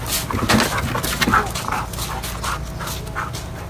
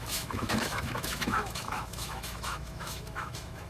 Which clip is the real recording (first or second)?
first